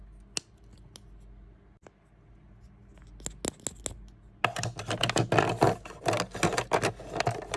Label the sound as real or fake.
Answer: real